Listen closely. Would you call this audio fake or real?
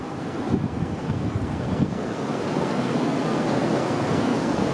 fake